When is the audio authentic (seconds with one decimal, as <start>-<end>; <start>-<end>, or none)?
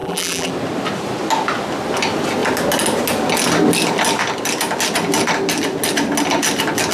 0.5-6.9